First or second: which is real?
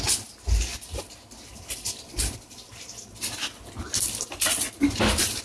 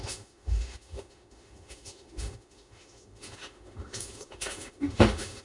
first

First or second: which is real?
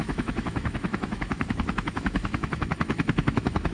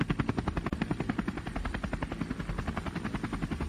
second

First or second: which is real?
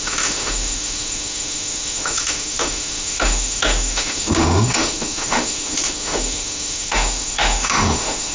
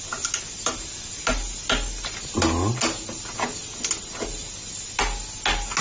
second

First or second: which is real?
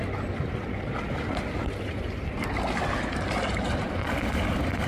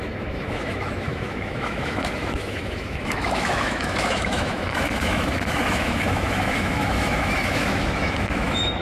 first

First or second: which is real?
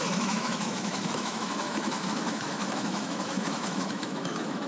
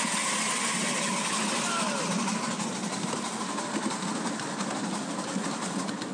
second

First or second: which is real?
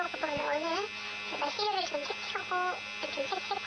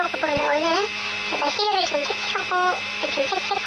first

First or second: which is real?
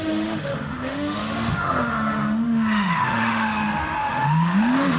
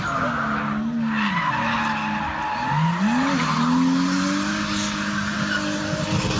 second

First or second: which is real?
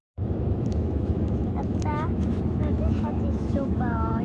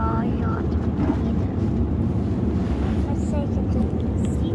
second